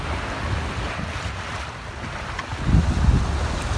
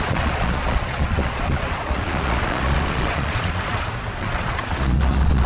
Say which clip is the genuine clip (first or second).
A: first